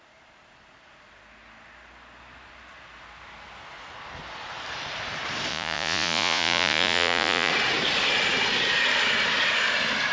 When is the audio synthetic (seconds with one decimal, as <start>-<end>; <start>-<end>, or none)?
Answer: 5.5-7.5